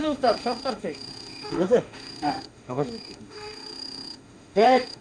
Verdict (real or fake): fake